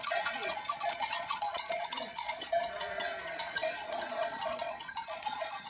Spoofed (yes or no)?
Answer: yes